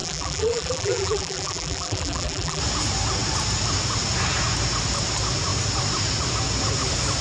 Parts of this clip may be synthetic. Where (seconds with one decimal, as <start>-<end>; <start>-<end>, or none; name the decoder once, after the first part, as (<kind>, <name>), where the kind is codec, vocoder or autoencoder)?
0.0-2.6 (vocoder, BigVGAN v2)